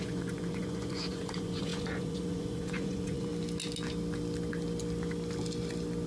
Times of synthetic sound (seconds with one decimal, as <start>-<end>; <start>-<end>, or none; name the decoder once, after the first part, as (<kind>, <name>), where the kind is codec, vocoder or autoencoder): 0.0-3.3 (vocoder, Vocos)